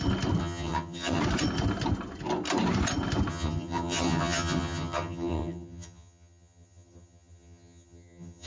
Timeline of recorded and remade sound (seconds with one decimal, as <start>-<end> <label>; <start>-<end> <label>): 0.0-0.4 recorded; 0.4-1.2 remade; 1.2-3.3 recorded; 3.3-8.5 remade